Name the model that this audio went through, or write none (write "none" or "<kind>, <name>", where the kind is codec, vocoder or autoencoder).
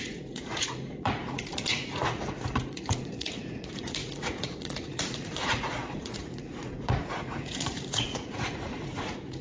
vocoder, Vocos